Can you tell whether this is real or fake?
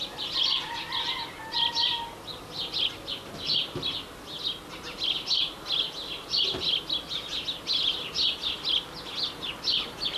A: real